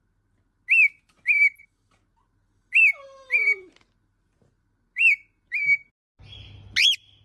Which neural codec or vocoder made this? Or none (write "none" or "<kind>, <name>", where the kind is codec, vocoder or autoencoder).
none